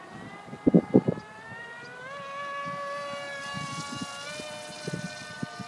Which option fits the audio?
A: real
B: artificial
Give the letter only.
A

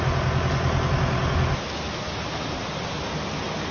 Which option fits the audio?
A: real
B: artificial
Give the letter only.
A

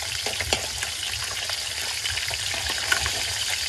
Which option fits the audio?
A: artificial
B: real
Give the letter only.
B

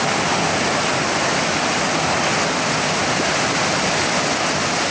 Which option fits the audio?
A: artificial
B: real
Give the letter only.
B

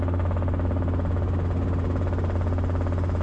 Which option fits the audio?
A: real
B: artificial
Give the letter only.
A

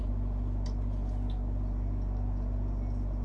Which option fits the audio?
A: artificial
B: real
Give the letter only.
B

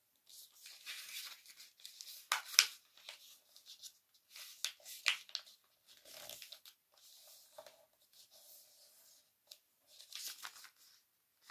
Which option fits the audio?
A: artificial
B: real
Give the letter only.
B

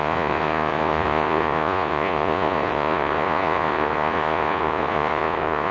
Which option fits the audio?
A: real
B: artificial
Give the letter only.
B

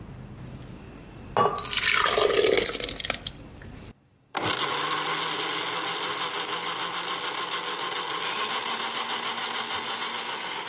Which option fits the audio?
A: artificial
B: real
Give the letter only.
B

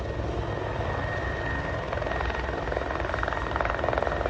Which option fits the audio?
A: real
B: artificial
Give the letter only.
A